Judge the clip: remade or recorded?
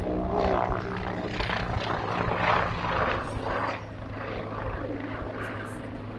recorded